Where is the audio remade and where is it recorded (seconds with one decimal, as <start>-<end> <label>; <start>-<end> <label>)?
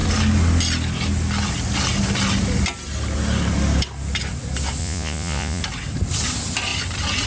0.0-4.8 recorded; 4.8-5.6 remade; 5.6-7.3 recorded